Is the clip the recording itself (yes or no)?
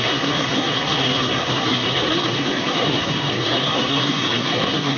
no